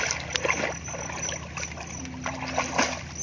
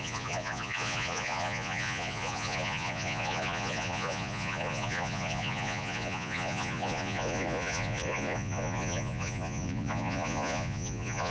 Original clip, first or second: first